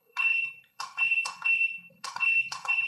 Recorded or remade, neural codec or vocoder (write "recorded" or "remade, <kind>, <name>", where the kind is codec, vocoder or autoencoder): remade, codec, HILCodec